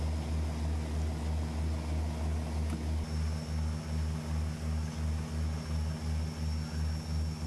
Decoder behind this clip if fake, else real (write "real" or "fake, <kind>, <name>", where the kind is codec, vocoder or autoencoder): real